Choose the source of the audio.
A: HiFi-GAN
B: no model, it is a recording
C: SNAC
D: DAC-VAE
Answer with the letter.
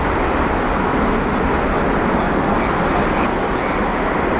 B